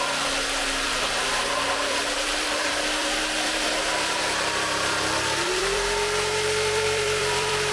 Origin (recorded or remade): remade